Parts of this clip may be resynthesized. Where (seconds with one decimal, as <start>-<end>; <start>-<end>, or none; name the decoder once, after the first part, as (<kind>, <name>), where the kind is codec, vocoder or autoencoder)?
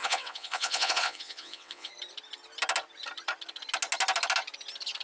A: 0.0-1.9 (vocoder, WaveNeXt)